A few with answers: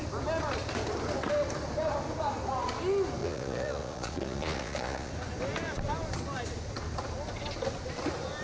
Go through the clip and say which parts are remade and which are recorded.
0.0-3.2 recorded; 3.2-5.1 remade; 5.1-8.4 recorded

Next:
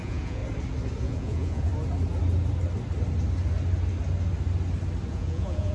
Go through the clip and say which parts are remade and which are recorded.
0.0-0.4 remade; 0.4-1.0 recorded; 1.0-1.7 remade; 1.7-5.1 recorded; 5.1-5.7 remade